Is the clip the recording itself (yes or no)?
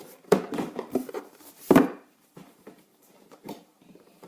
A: no